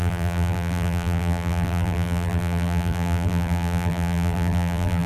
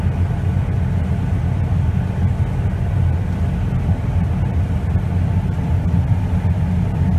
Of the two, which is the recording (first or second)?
second